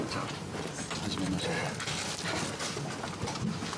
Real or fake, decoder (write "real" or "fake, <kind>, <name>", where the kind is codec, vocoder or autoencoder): real